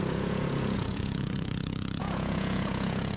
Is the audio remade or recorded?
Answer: remade